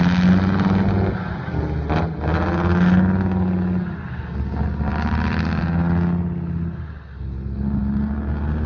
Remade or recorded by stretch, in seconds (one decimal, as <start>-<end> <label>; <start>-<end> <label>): 0.0-4.9 recorded; 4.9-5.6 remade; 5.6-8.7 recorded